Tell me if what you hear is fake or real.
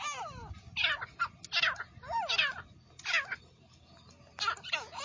real